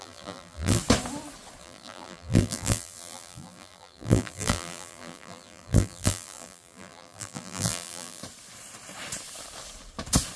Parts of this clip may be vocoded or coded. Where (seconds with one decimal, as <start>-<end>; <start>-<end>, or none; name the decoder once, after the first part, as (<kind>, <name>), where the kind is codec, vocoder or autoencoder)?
0.0-0.8 (vocoder, BigVGAN v2); 1.6-8.2